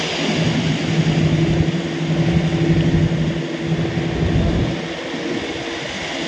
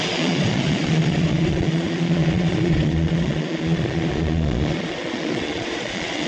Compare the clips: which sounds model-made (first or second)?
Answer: second